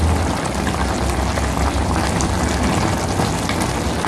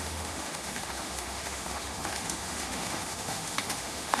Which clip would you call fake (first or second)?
second